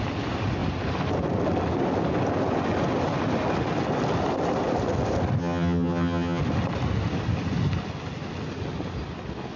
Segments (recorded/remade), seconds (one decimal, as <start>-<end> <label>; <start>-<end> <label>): 0.0-5.4 recorded; 5.4-6.4 remade; 6.4-9.6 recorded